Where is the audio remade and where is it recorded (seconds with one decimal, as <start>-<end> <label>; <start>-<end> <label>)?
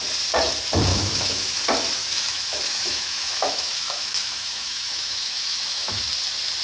0.0-0.9 recorded; 0.9-1.6 remade; 1.6-2.0 recorded; 2.0-6.0 remade; 6.0-6.6 recorded